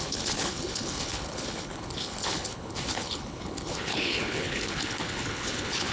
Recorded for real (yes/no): no